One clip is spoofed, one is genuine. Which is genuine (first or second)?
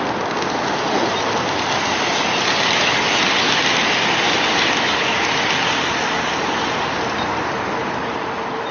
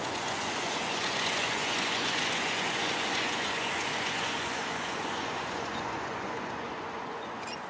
first